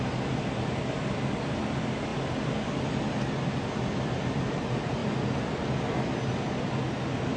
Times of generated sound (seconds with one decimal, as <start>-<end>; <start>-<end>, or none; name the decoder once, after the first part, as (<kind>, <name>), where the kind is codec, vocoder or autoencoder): none